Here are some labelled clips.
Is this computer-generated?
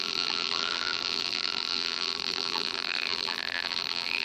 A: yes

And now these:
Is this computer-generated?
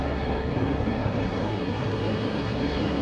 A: yes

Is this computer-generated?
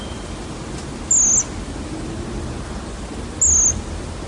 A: no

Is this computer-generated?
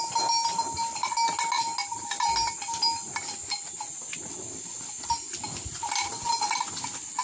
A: no